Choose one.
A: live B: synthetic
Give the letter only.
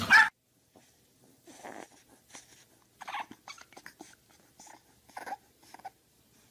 A